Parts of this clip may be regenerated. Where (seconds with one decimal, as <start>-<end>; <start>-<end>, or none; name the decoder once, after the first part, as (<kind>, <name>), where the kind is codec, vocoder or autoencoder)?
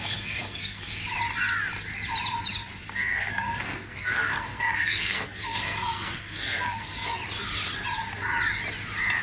0.0-1.0 (codec, SNAC); 2.8-7.2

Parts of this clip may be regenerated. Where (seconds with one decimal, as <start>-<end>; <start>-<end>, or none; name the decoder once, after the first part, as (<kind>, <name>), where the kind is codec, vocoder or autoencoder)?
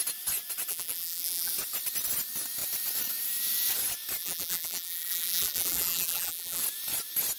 0.7-1.5 (vocoder, BigVGAN v2); 4.2-6.6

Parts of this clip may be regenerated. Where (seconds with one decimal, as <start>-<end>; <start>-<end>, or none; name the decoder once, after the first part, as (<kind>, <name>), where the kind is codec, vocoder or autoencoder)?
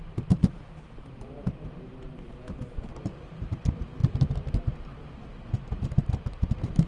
0.0-6.9 (vocoder, BigVGAN v2)